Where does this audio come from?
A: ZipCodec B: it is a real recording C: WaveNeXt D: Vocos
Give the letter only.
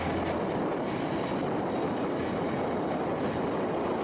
B